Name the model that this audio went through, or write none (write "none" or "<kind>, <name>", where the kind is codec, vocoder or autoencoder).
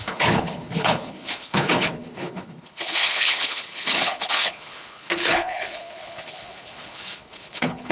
codec, HILCodec